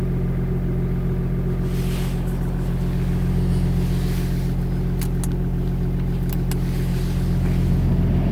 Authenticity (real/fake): real